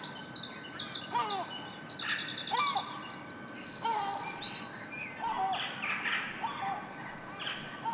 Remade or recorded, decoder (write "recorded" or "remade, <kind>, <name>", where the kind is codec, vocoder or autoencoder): recorded